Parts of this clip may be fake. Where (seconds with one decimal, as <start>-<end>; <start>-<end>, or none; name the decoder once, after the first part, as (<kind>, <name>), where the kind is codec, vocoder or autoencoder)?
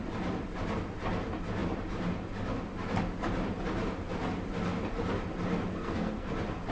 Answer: 5.7-6.3 (codec, SNAC)